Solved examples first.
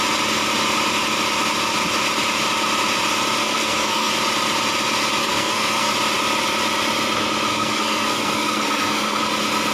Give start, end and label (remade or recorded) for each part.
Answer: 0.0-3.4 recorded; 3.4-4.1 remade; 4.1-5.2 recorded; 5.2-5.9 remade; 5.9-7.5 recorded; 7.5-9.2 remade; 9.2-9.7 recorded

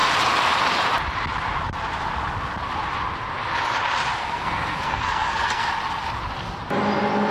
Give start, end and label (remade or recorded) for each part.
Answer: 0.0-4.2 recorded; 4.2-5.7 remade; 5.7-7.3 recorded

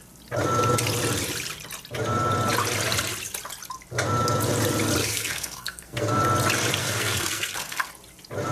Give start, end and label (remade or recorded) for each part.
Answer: 0.0-5.0 recorded; 5.0-6.2 remade; 6.2-6.8 recorded; 6.8-7.9 remade; 7.9-8.5 recorded

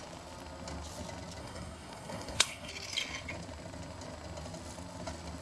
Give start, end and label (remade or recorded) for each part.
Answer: 0.0-1.4 recorded; 1.4-2.7 remade; 2.7-5.4 recorded

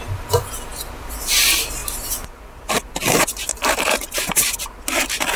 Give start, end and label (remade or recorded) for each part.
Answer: 0.0-5.4 recorded

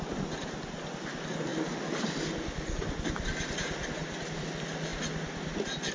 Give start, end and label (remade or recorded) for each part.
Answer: 0.0-5.9 recorded

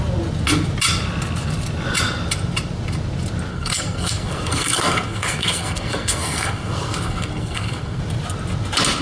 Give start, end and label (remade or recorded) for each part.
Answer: 0.0-3.5 recorded; 3.5-8.0 remade; 8.0-9.0 recorded

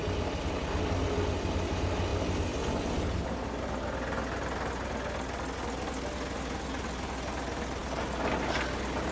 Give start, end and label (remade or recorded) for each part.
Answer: 0.0-9.1 recorded